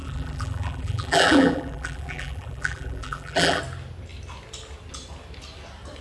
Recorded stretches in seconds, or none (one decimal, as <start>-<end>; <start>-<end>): 3.6-6.0